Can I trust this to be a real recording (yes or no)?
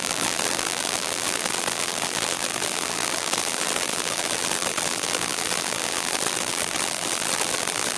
no